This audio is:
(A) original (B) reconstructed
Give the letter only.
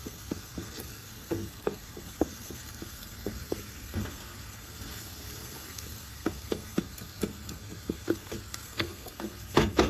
B